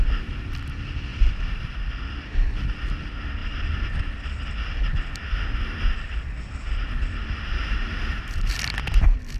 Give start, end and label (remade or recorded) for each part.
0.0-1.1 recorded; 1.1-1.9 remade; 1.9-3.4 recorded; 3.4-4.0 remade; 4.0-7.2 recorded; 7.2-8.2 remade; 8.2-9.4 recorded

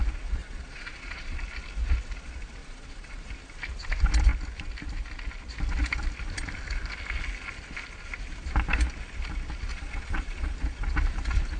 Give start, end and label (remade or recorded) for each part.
0.0-0.4 recorded; 0.4-1.4 remade; 1.4-2.6 recorded; 2.6-3.3 remade; 3.3-9.7 recorded; 9.7-10.5 remade; 10.5-11.6 recorded

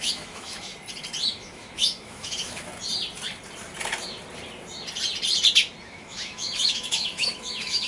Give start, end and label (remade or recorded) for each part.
0.0-0.7 remade; 0.7-1.3 recorded; 1.3-2.7 remade; 2.7-5.8 recorded; 5.8-7.9 remade

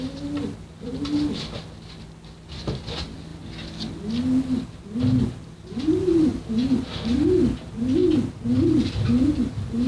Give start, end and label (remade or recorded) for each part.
0.0-9.9 recorded

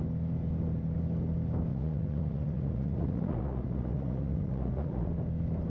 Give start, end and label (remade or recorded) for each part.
0.0-1.7 recorded; 1.7-5.1 remade; 5.1-5.7 recorded